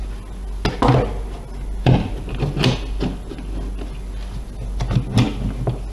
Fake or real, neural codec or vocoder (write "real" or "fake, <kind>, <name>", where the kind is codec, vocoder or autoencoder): real